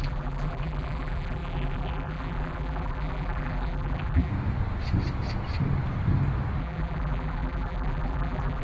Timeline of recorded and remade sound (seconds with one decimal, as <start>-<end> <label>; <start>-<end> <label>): 0.0-4.3 remade; 4.3-6.6 recorded; 6.6-8.6 remade